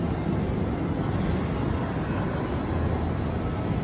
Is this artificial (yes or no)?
no